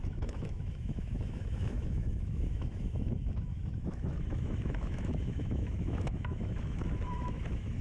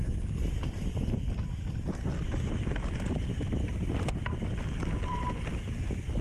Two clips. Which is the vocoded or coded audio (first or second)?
first